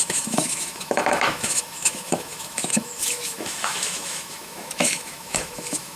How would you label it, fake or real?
fake